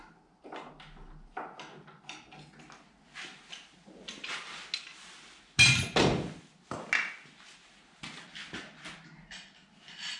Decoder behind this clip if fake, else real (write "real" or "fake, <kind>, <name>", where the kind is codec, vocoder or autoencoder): real